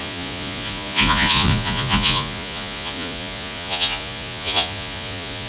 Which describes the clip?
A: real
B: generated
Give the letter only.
B